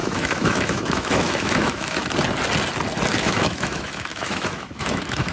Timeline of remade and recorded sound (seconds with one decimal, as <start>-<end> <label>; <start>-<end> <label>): 0.0-2.0 remade; 2.0-3.1 recorded; 3.1-5.3 remade